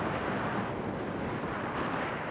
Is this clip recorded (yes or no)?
yes